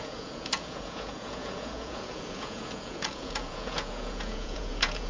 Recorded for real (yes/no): no